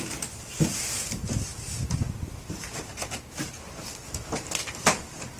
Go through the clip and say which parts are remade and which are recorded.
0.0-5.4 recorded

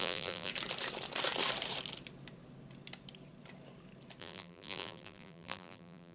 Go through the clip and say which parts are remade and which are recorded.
0.0-0.5 remade; 0.5-4.2 recorded; 4.2-6.1 remade

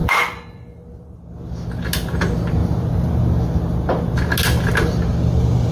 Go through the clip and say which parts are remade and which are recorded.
0.0-1.2 remade; 1.2-2.6 recorded; 2.6-3.2 remade; 3.2-5.7 recorded

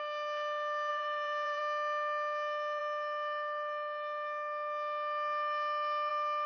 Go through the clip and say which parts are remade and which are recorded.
0.0-0.9 recorded; 0.9-1.6 remade; 1.6-6.5 recorded

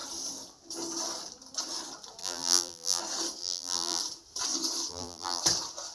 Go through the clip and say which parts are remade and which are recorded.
0.0-2.2 recorded; 2.2-3.0 remade; 3.0-3.4 recorded; 3.4-4.0 remade; 4.0-4.9 recorded; 4.9-5.4 remade; 5.4-5.9 recorded